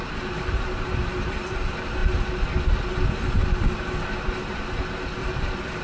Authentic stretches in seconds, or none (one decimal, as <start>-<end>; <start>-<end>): 0.0-5.2

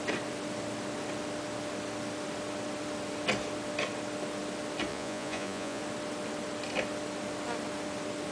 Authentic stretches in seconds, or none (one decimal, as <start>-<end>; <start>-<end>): 0.0-4.9; 5.8-8.3